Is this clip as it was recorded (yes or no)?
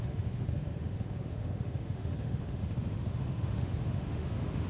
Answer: no